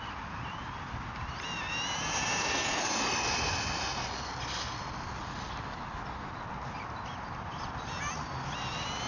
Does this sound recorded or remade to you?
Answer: recorded